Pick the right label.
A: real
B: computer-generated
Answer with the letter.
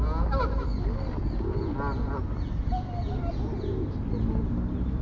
A